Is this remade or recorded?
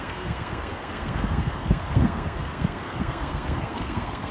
remade